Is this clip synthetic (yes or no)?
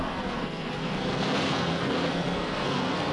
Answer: yes